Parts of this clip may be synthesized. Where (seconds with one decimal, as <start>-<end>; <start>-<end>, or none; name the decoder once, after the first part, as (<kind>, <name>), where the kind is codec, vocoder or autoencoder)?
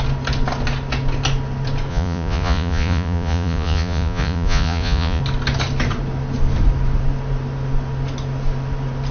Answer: 1.9-5.2 (vocoder, Vocos)